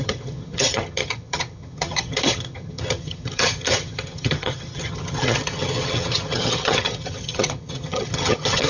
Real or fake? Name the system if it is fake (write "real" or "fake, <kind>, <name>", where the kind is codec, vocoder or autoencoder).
fake, vocoder, HiFi-GAN